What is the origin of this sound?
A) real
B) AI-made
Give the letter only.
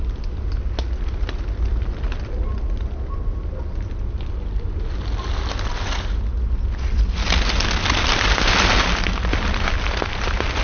A